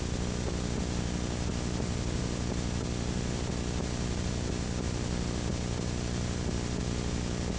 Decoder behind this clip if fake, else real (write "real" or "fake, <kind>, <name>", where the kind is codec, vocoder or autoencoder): real